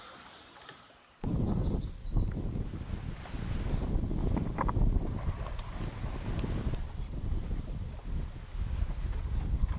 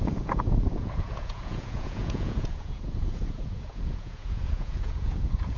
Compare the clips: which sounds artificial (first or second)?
second